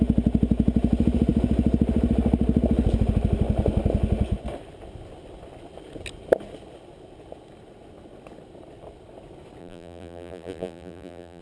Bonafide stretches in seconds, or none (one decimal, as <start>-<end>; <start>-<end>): 0.0-9.6